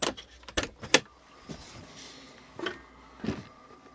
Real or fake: real